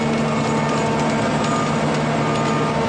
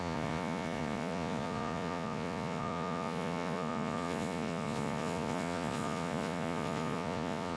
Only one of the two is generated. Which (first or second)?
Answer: second